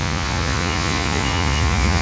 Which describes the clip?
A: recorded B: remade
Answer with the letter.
B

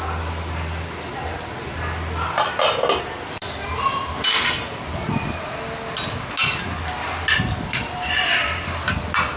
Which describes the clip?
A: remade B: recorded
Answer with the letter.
B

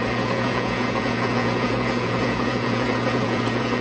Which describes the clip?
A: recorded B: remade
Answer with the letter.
B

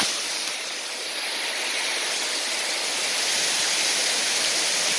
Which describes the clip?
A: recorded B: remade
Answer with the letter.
A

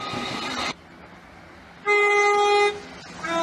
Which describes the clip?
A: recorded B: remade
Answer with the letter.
A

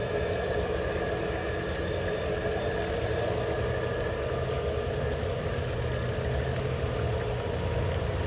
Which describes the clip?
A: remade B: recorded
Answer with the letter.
B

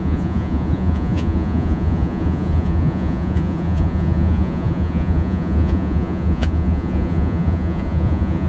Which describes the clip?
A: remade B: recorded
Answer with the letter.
A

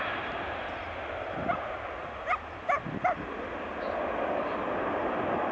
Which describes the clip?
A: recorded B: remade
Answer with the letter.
A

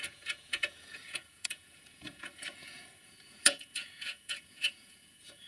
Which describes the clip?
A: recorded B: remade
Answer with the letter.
B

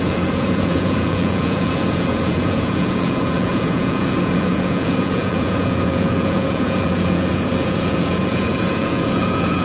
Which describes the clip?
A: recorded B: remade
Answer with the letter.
B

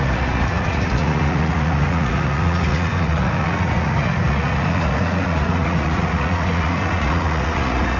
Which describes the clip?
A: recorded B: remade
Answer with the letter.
B